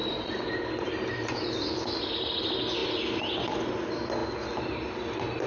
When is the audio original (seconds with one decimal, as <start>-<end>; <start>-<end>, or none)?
0.0-5.5